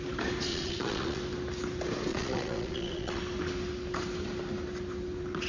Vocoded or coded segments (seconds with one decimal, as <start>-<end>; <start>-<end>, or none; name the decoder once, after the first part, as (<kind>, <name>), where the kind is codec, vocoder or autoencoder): 0.5-1.2 (vocoder, Vocos); 2.1-3.2

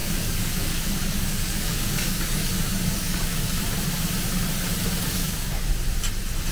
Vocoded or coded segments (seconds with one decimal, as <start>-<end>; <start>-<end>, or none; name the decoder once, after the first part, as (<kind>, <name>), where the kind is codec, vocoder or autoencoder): 0.0-3.6 (codec, DAC); 5.0-5.6